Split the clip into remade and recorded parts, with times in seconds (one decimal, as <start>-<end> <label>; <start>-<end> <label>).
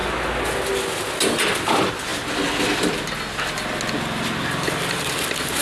0.0-5.6 recorded